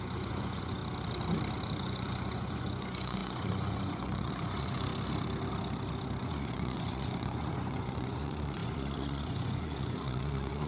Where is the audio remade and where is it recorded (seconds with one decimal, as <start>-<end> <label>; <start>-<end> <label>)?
0.0-0.8 remade; 0.8-1.8 recorded; 1.8-4.9 remade; 4.9-6.2 recorded; 6.2-10.7 remade